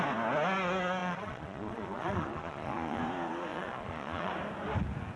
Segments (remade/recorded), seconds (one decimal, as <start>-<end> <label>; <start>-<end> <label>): 0.0-1.0 recorded; 1.0-3.0 remade; 3.0-3.5 recorded; 3.5-4.3 remade; 4.3-5.2 recorded